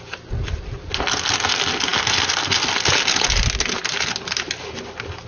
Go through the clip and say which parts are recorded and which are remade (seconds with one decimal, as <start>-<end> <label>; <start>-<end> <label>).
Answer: 0.0-5.3 recorded